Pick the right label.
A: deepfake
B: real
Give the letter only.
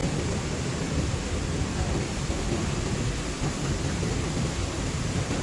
B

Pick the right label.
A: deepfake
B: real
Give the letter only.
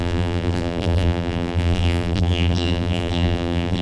A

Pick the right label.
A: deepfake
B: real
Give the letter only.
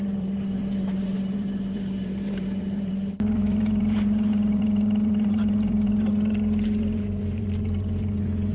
A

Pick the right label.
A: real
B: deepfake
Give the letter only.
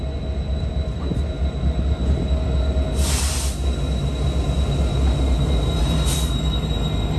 A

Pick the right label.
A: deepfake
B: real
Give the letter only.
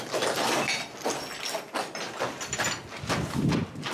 B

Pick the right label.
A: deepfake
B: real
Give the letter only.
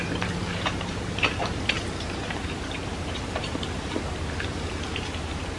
A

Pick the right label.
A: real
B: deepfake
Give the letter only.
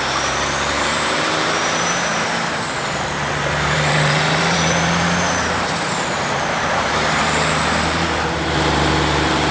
B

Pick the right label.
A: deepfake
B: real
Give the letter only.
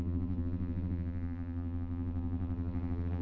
A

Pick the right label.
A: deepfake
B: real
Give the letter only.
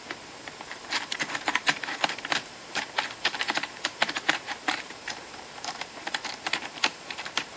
A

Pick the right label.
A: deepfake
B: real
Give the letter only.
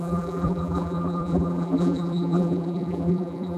A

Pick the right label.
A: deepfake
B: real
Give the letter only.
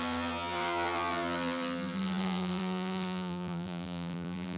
A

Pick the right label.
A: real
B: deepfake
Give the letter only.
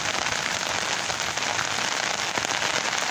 A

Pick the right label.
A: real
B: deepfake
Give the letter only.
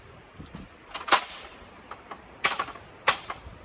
B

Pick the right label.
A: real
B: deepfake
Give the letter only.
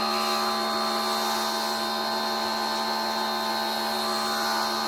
A